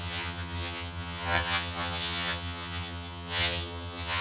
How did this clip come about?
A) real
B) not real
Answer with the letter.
B